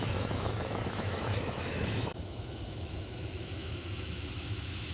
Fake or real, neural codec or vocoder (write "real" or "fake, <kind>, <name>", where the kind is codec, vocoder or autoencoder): fake, autoencoder, DAC-VAE